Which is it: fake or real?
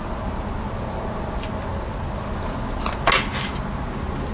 real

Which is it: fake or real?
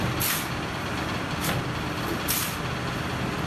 real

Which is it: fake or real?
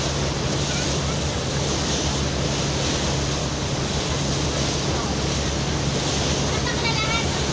real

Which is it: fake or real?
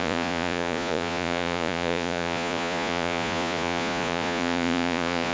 fake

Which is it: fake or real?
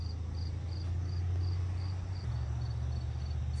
real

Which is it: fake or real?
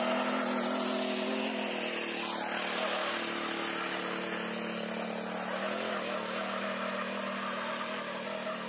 real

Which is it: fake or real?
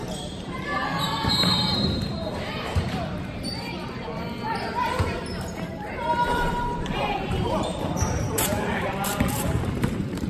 fake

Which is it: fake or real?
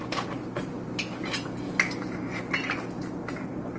real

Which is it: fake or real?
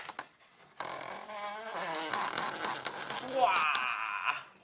real